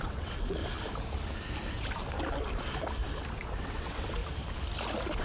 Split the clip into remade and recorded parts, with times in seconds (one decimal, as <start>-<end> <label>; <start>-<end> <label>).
0.0-0.6 remade; 0.6-3.6 recorded; 3.6-4.2 remade; 4.2-5.2 recorded